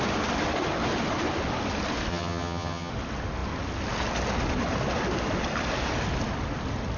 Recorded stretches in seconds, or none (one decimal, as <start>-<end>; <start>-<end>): 0.0-2.1; 2.9-7.0